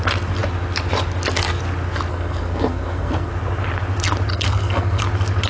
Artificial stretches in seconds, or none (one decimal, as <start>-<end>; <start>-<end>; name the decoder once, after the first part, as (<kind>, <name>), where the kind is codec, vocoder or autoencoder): 2.1-3.3 (codec, SNAC); 4.3-5.0